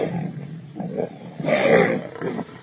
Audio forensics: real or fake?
fake